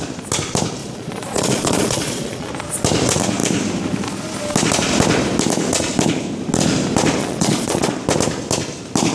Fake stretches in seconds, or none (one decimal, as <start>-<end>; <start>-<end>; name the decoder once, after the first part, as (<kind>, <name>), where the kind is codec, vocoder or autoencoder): 0.8-2.5 (vocoder, Vocos); 7.2-7.9